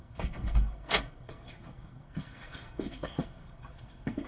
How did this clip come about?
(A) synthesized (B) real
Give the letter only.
A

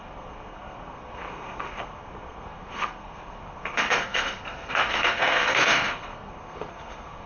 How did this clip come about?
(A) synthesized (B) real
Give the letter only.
A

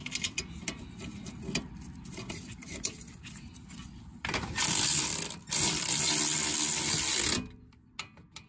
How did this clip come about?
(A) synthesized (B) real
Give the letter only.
B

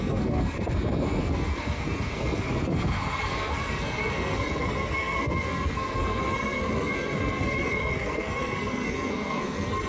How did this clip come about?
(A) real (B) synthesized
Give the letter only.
B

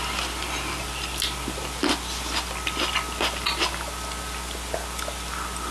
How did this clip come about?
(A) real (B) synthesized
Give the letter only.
A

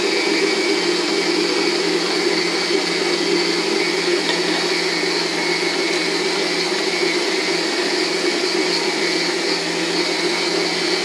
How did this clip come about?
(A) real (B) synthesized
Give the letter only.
A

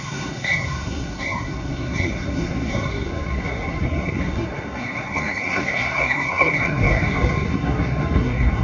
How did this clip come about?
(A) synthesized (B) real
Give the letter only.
A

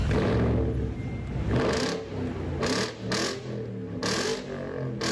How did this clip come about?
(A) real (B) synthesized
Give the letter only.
A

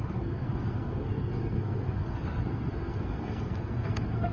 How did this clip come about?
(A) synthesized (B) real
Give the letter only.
A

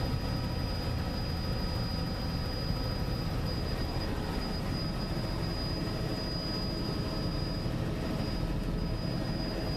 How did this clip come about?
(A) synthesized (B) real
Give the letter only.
B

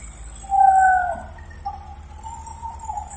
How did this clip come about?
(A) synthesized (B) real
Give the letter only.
B